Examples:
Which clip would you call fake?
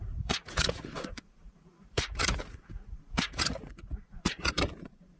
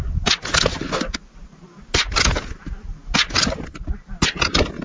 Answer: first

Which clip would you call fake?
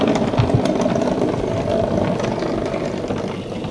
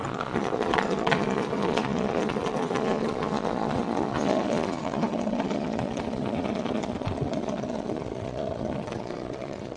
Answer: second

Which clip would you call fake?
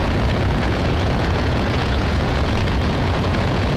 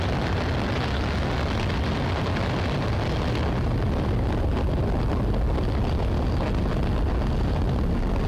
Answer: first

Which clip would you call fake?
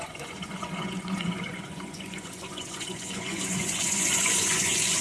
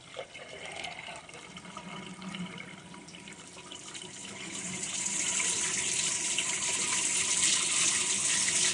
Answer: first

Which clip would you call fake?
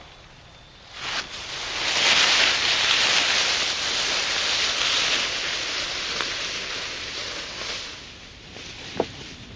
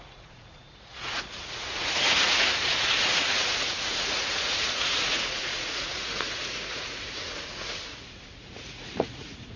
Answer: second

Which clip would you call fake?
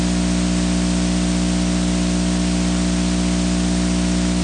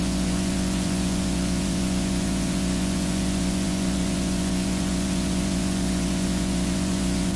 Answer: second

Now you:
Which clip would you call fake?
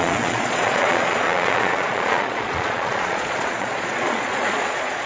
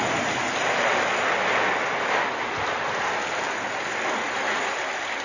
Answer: first